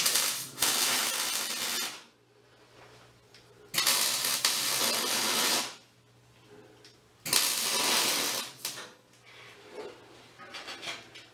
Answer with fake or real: real